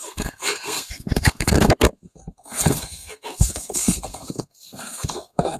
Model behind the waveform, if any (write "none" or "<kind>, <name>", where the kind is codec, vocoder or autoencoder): codec, SNAC